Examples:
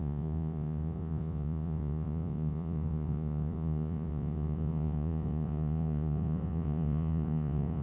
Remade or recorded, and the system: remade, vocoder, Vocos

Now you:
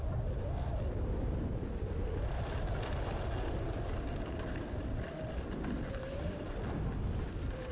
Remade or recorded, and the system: recorded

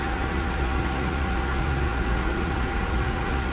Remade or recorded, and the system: remade, vocoder, Vocos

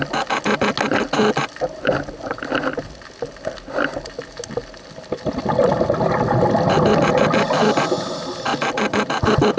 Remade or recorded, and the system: recorded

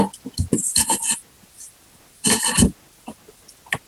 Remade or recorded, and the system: recorded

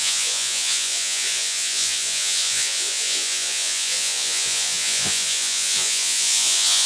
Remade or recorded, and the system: remade, vocoder, Vocos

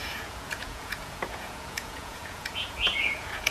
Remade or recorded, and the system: remade, vocoder, Vocos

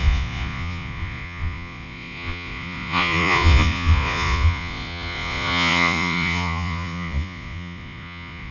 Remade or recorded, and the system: remade, vocoder, Vocos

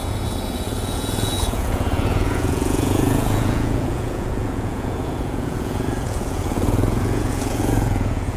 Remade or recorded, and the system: remade, vocoder, Vocos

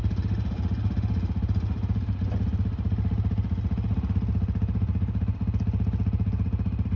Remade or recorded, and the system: recorded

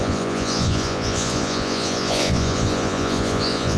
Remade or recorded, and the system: remade, vocoder, Vocos